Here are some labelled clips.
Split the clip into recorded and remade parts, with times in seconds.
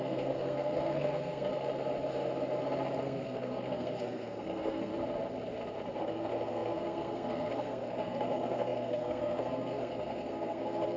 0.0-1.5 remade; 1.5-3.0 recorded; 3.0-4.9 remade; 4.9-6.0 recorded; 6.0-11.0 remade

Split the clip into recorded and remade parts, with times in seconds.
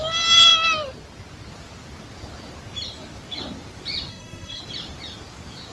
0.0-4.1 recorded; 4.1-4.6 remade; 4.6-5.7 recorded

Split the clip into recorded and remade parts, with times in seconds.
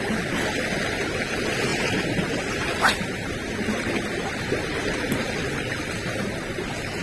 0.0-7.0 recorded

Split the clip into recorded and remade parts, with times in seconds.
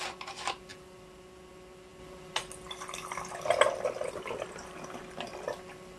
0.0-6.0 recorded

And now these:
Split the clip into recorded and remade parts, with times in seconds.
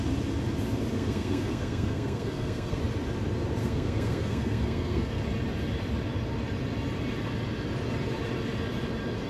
0.0-0.9 recorded; 0.9-2.8 remade; 2.8-3.6 recorded; 3.6-5.2 remade; 5.2-9.3 recorded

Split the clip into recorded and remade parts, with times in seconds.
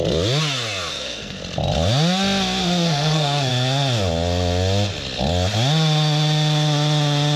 0.0-0.9 recorded; 0.9-1.4 remade; 1.4-2.6 recorded; 2.6-3.5 remade; 3.5-7.4 recorded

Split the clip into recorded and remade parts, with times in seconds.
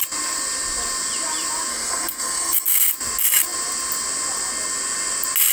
0.0-1.7 recorded; 1.7-2.9 remade; 2.9-5.5 recorded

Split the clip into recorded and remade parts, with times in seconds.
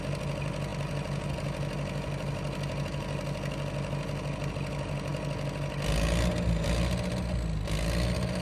0.0-8.4 recorded